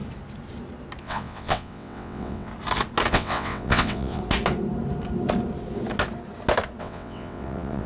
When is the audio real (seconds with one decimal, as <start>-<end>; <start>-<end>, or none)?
0.0-1.0; 2.5-3.1; 4.2-6.8